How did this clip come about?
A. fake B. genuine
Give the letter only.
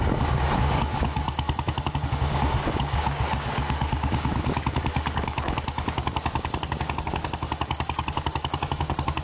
A